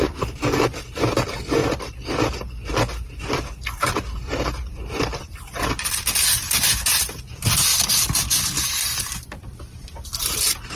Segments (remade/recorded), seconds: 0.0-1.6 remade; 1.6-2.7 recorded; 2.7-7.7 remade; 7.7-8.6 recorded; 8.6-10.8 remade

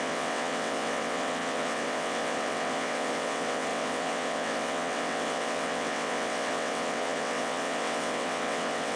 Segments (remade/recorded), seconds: 0.0-9.0 remade

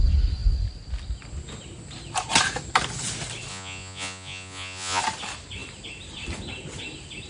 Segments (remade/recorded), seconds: 0.0-3.5 recorded; 3.5-5.0 remade; 5.0-7.3 recorded

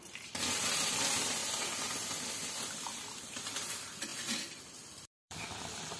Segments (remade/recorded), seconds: 0.0-1.4 remade; 1.4-3.1 recorded; 3.1-6.0 remade

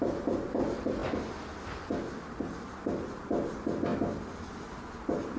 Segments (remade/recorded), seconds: 0.0-5.4 recorded

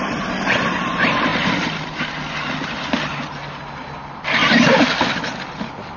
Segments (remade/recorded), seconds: 0.0-6.0 recorded